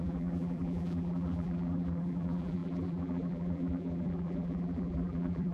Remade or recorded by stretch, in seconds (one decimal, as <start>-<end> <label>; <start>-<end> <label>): 0.0-5.5 remade